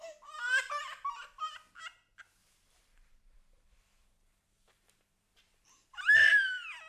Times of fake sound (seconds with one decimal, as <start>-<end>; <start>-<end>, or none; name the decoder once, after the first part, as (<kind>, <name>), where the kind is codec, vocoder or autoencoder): 2.4-6.5 (vocoder, BigVGAN v2)